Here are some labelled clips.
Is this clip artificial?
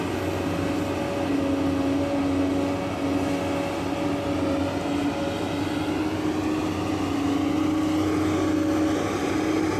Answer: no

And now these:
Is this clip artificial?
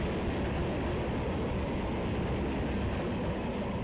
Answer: no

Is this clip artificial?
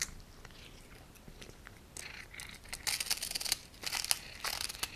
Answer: no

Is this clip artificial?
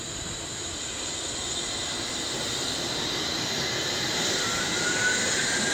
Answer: no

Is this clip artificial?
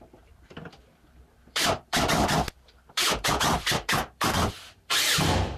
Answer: yes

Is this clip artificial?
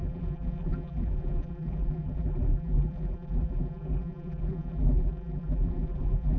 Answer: yes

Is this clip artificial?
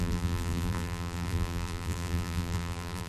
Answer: yes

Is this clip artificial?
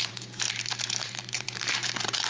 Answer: yes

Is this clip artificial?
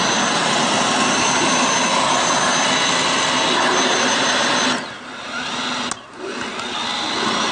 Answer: no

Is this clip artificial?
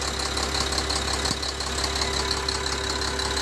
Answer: no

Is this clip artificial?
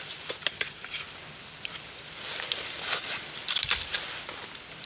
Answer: yes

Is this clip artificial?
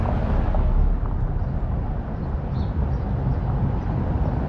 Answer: no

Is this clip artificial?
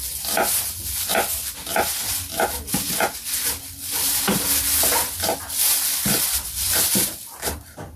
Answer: no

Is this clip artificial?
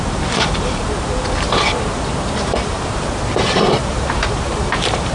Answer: yes